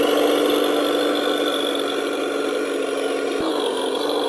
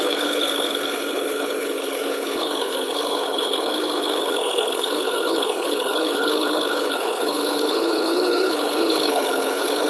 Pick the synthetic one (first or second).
second